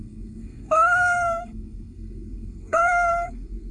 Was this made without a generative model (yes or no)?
no